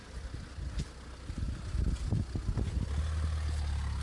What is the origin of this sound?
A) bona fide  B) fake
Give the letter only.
A